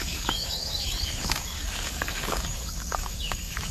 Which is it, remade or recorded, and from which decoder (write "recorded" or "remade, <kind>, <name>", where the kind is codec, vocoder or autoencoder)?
remade, codec, DAC